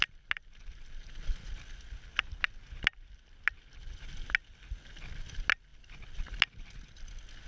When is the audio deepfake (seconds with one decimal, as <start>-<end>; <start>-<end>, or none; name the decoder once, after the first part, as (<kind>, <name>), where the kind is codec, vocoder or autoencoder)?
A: none